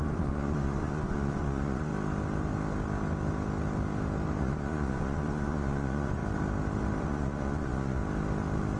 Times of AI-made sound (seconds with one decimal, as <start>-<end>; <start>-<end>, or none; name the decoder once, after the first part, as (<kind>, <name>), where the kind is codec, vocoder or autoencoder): 0.0-1.9 (vocoder, Vocos); 4.4-6.2; 7.0-8.0